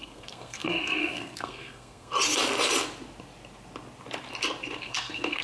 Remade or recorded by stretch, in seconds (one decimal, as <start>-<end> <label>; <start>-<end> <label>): 0.0-2.1 remade; 2.1-4.8 recorded; 4.8-5.4 remade